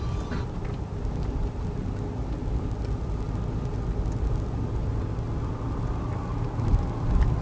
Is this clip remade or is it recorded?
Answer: recorded